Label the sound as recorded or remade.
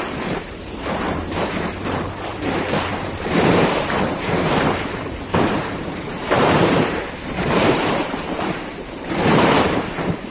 remade